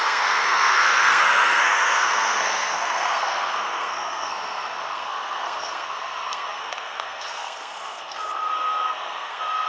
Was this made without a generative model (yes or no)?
no